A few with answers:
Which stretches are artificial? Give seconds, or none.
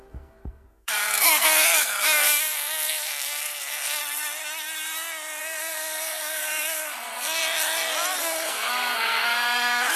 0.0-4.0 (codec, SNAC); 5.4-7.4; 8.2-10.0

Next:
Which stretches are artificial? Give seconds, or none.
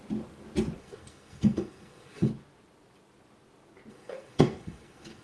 0.8-2.3 (codec, SNAC); 3.9-5.2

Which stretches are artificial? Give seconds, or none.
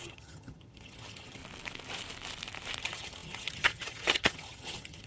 0.0-1.4 (vocoder, HiFi-GAN); 2.8-5.1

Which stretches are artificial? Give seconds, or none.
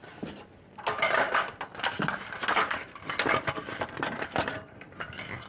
none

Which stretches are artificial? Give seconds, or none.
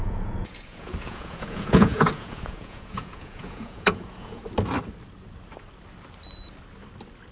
0.0-4.4 (vocoder, Vocos)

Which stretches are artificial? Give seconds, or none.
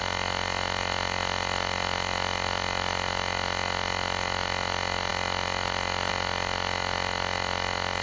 none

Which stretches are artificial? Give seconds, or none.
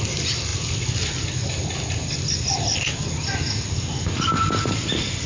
none